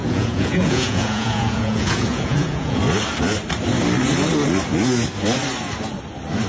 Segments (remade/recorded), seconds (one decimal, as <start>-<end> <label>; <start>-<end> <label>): 0.0-2.8 remade; 2.8-6.5 recorded